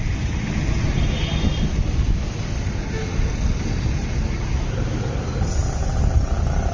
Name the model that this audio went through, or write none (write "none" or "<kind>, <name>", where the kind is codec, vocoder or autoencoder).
none